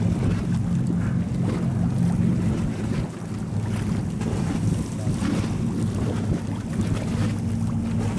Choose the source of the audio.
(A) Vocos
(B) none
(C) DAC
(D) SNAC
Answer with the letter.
B